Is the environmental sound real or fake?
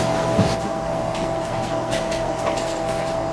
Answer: fake